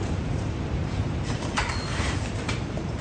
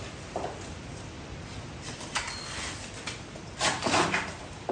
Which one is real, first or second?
second